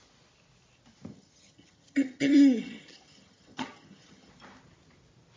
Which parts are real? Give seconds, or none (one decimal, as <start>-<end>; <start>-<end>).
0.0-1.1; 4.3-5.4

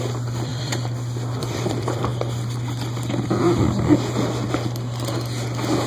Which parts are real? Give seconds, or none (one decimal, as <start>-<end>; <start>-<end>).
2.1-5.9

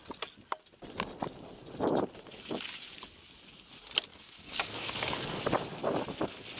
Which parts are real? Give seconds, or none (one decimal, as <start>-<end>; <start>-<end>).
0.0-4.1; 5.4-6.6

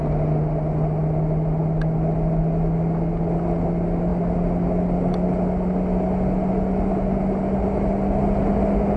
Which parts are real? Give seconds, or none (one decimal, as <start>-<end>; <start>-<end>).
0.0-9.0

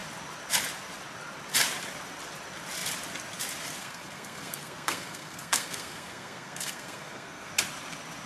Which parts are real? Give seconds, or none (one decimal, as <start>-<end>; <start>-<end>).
0.0-3.8; 7.5-8.3